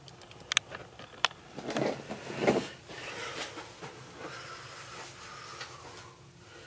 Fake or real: real